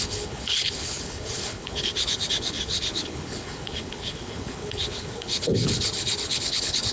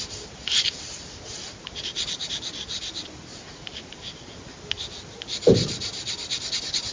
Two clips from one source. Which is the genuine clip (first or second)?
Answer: second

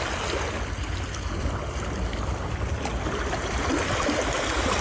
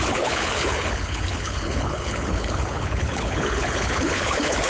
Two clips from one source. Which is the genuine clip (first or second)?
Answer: first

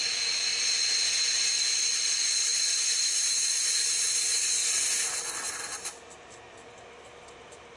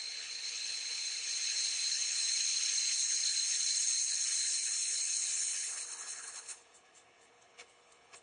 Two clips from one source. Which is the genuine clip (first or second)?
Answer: first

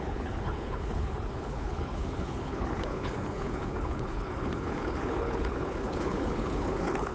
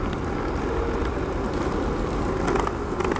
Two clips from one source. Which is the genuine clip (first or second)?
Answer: second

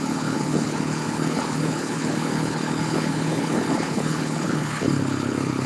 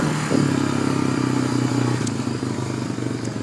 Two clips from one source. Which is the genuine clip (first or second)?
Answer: second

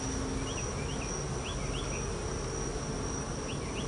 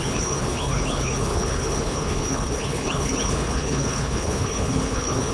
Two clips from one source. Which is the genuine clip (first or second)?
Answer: first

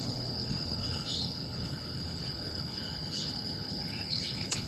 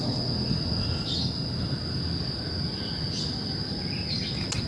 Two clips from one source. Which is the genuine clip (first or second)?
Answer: second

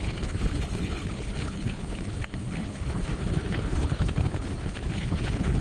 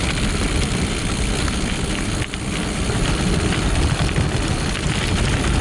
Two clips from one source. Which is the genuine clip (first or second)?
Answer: second